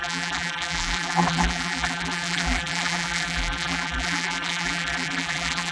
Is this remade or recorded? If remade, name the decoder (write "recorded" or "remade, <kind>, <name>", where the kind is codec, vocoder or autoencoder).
remade, vocoder, BigVGAN v2